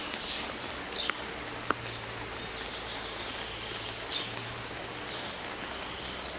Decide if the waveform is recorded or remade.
recorded